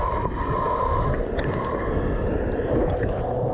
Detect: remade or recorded recorded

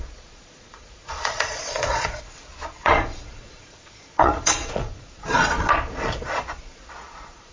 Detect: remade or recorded remade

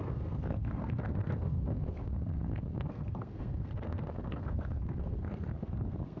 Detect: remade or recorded remade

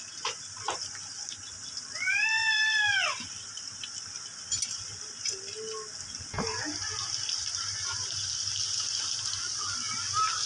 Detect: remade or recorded recorded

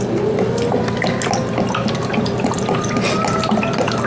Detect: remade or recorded recorded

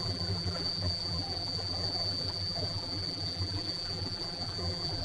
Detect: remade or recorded remade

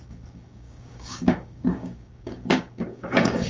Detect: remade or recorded remade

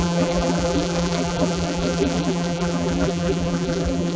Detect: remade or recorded remade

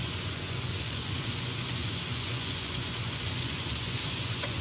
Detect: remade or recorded remade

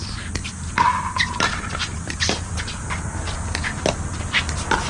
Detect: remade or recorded recorded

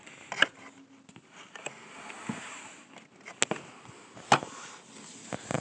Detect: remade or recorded recorded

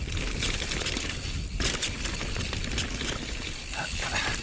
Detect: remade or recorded recorded